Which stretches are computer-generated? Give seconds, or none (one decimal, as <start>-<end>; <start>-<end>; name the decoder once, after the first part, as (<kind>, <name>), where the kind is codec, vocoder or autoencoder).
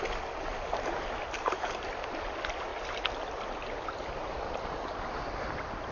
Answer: none